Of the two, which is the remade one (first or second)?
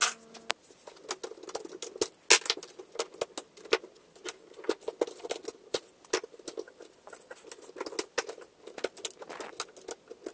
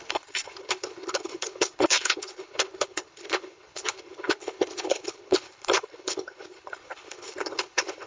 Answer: second